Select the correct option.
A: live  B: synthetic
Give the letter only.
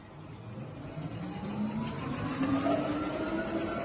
A